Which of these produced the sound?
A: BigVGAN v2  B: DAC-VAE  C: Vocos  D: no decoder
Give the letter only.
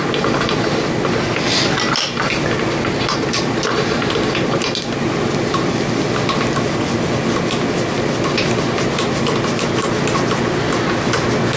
D